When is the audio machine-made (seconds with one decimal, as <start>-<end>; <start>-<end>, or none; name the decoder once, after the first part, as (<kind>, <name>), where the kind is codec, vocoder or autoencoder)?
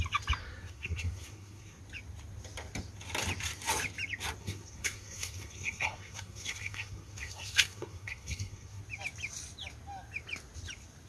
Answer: 0.4-1.8 (codec, SNAC); 4.4-8.8